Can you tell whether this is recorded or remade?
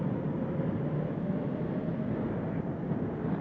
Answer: recorded